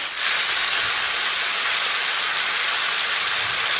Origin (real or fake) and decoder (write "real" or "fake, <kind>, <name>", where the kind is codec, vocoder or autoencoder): real